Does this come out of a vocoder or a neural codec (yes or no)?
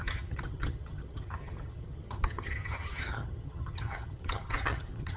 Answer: yes